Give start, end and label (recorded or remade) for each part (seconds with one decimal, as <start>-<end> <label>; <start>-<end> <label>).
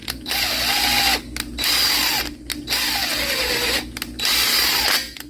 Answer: 0.0-5.3 recorded